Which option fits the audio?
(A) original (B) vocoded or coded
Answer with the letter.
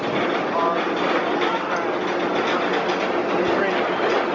A